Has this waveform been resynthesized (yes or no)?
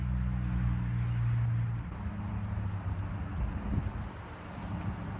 no